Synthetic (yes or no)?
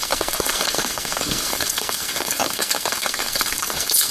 yes